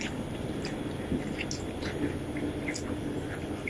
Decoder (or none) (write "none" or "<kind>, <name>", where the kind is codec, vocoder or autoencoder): none